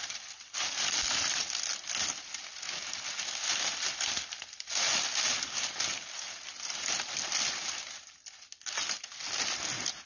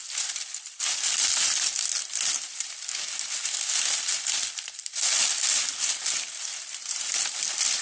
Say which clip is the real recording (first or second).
first